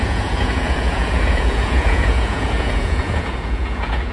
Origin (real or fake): fake